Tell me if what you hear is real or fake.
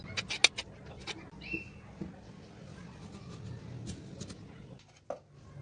real